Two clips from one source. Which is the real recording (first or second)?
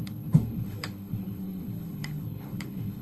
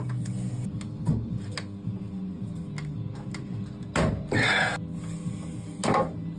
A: second